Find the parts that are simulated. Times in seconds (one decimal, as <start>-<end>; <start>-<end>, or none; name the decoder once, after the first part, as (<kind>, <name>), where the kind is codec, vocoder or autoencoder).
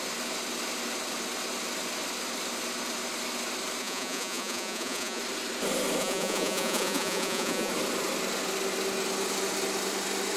3.8-5.2 (vocoder, Vocos); 6.0-7.7